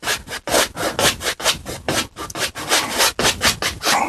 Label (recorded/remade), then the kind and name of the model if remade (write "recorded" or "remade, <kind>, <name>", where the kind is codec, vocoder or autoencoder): recorded